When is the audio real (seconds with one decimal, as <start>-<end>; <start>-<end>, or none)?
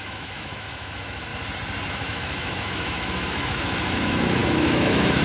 1.3-1.9